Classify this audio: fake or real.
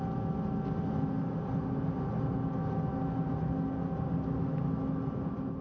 real